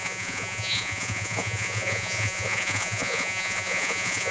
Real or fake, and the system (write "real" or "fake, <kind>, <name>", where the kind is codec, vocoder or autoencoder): fake, vocoder, Vocos